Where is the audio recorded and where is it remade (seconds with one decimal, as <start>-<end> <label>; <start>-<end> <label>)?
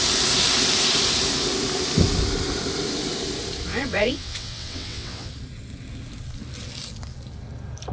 0.0-3.7 recorded; 3.7-5.3 remade; 5.3-7.9 recorded